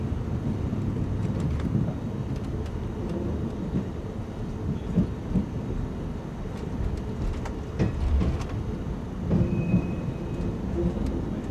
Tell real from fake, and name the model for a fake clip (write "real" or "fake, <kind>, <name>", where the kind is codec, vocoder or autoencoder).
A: real